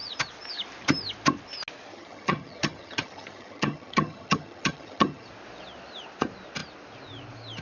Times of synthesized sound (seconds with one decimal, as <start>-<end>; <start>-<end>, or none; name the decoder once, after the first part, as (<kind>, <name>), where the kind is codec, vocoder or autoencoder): 1.9-5.3 (vocoder, HiFi-GAN)